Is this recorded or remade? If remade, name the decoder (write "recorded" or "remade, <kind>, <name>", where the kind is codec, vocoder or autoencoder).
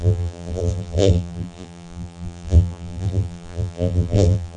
remade, vocoder, BigVGAN v2